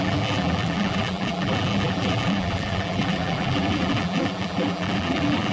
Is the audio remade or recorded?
remade